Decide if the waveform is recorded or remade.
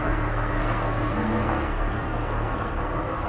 remade